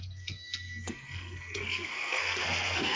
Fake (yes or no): yes